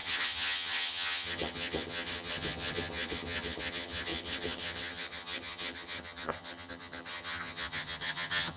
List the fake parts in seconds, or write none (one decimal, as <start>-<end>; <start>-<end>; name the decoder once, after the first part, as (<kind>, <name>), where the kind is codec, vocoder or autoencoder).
0.0-8.6 (vocoder, HiFi-GAN)